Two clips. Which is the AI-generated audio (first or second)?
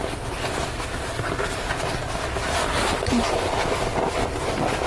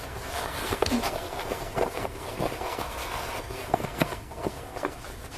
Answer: second